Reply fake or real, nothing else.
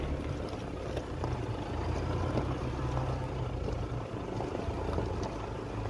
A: real